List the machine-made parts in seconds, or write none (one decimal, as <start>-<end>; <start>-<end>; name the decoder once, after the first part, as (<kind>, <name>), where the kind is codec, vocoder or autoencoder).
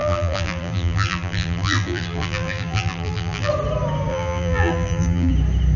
0.0-3.5 (vocoder, BigVGAN v2); 4.1-5.3